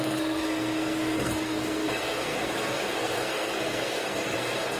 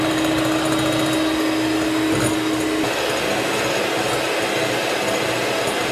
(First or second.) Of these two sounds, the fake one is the first